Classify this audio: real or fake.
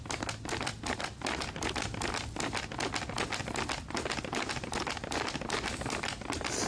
real